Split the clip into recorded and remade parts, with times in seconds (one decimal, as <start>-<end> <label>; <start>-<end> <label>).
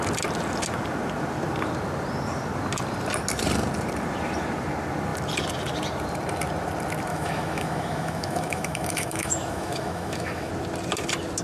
0.0-7.1 recorded; 7.1-10.5 remade; 10.5-11.4 recorded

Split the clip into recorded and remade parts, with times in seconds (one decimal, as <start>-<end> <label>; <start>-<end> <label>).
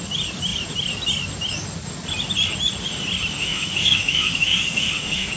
0.0-3.4 recorded; 3.4-5.4 remade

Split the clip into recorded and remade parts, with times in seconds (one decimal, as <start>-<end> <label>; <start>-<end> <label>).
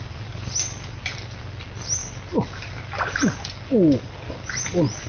0.0-5.1 recorded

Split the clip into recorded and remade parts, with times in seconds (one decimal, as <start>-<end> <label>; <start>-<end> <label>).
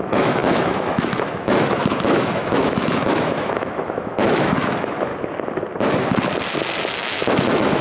0.0-5.1 remade; 5.1-6.9 recorded; 6.9-7.8 remade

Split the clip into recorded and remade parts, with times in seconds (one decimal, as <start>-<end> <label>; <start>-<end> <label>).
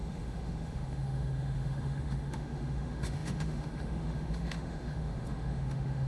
0.0-6.1 remade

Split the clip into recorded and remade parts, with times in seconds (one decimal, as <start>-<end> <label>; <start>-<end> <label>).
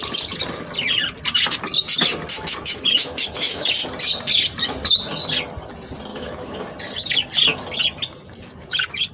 0.0-2.3 recorded; 2.3-3.7 remade; 3.7-6.1 recorded; 6.1-6.6 remade; 6.6-9.1 recorded